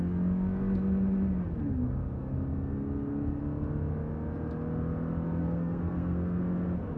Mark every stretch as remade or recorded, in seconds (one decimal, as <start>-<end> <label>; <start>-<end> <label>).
0.0-5.4 recorded; 5.4-6.4 remade; 6.4-7.0 recorded